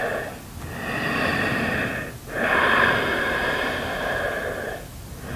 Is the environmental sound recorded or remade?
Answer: recorded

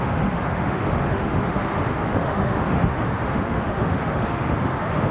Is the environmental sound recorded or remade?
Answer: remade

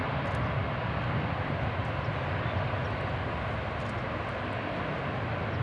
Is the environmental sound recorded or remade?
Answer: recorded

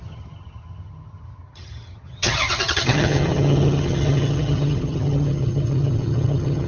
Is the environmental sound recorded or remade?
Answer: remade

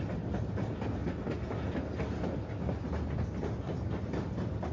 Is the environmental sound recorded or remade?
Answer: recorded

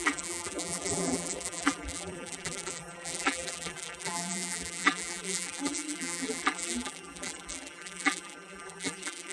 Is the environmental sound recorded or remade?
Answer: remade